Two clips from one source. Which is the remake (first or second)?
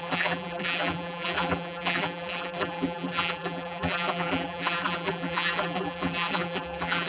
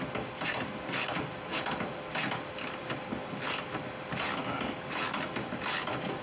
first